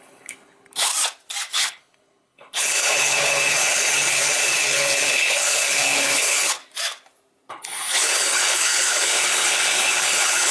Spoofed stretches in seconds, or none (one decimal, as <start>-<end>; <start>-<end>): 0.0-0.9; 1.5-6.6; 7.5-10.5